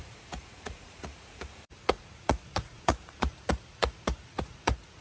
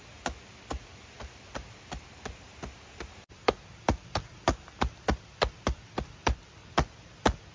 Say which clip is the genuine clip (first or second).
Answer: second